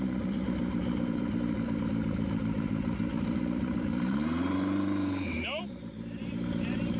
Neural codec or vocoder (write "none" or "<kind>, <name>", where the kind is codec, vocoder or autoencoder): vocoder, BigVGAN v2